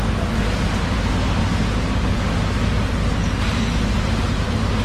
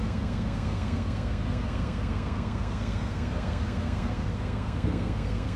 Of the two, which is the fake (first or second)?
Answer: second